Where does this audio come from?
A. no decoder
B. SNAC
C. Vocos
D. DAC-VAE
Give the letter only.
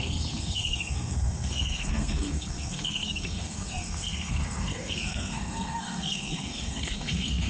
B